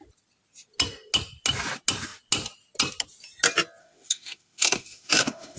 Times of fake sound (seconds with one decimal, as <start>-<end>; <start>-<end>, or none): 3.8-5.6